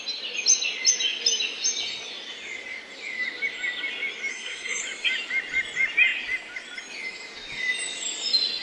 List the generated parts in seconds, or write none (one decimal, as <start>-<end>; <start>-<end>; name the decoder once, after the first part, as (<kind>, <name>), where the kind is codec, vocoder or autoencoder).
4.3-4.8 (codec, SNAC)

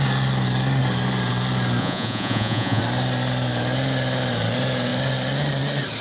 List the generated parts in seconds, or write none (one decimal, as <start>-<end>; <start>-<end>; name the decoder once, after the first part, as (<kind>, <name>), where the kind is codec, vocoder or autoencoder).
1.8-2.8 (vocoder, Vocos)

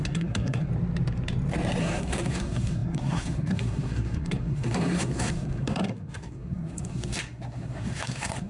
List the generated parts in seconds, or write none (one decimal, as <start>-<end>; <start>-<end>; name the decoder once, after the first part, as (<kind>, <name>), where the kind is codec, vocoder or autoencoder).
0.0-0.7 (codec, SNAC); 1.8-8.5

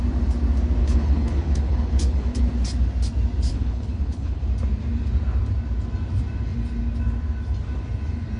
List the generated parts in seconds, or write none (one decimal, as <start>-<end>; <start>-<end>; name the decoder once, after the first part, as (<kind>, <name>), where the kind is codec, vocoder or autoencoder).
0.8-2.4 (codec, HILCodec); 3.5-4.4

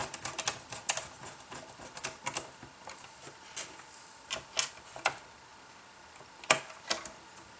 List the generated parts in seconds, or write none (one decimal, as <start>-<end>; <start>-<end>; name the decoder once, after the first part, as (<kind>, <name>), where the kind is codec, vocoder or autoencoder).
none

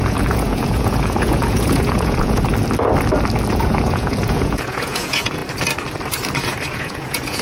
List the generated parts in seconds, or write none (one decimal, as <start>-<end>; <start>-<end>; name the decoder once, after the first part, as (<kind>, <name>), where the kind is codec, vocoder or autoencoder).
0.0-2.5 (vocoder, Vocos); 3.5-5.4; 6.7-7.4

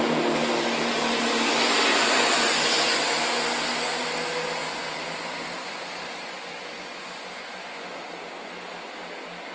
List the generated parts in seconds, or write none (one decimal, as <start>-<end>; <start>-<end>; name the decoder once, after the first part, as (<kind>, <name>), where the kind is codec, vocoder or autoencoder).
1.9-3.0 (vocoder, Vocos); 4.6-8.0